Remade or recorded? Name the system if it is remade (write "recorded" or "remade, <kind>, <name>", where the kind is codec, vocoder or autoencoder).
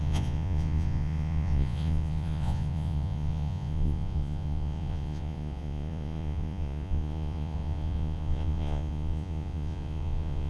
remade, vocoder, Vocos